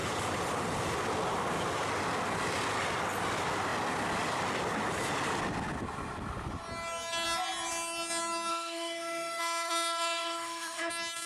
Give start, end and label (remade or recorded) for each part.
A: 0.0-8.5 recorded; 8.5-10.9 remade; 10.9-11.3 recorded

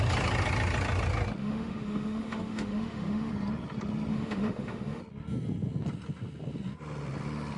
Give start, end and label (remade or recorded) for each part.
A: 0.0-1.4 recorded; 1.4-3.3 remade; 3.3-4.1 recorded; 4.1-5.0 remade; 5.0-7.6 recorded

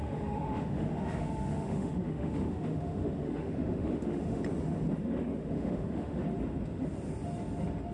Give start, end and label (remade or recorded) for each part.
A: 0.0-4.4 remade; 4.4-5.0 recorded; 5.0-6.2 remade; 6.2-7.9 recorded

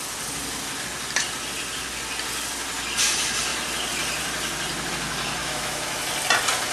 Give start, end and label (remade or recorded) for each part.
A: 0.0-5.4 recorded; 5.4-6.0 remade; 6.0-6.7 recorded

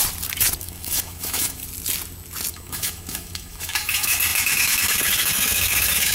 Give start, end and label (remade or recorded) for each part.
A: 0.0-0.6 recorded; 0.6-1.6 remade; 1.6-2.5 recorded; 2.5-6.1 remade